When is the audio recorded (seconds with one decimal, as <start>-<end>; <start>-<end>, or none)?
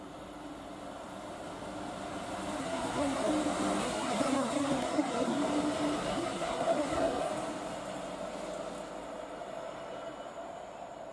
0.0-2.6; 3.3-3.8; 5.4-6.1; 7.3-11.1